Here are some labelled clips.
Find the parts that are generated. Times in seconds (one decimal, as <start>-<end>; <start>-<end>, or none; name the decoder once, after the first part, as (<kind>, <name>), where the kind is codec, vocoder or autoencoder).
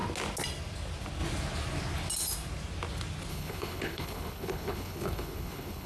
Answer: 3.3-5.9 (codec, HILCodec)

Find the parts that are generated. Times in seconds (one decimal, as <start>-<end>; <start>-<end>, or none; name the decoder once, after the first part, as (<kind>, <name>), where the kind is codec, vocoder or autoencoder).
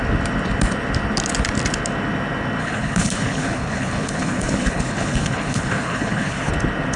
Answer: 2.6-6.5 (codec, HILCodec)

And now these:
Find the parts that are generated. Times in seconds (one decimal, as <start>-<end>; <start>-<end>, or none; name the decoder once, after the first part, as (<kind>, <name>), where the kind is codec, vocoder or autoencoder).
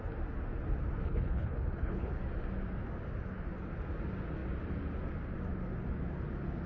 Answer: 1.0-2.2 (codec, HILCodec)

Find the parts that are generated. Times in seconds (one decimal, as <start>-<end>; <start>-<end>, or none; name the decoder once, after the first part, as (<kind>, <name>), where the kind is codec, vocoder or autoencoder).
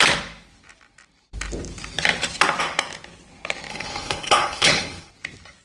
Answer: 3.7-5.1 (codec, HILCodec)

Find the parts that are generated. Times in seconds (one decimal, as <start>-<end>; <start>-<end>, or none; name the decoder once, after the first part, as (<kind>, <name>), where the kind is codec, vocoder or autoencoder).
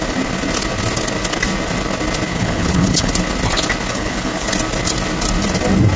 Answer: 2.3-3.1 (codec, HILCodec); 3.9-4.5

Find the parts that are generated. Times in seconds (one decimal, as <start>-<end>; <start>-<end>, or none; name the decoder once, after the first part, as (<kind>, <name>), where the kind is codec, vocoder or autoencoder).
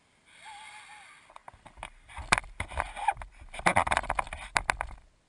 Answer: none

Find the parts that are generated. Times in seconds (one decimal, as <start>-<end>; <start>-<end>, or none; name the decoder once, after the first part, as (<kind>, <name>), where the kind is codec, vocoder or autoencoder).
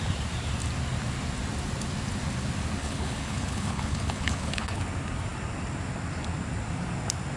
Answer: 2.8-4.8 (codec, HILCodec)